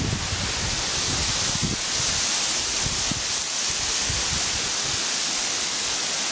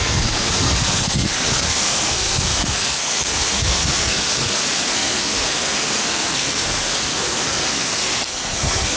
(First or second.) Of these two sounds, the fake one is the second